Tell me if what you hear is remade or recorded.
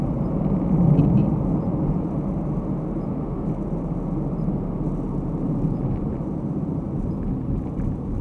recorded